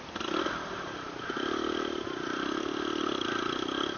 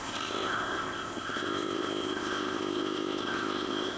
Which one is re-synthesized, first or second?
second